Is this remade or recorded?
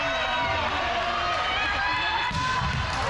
recorded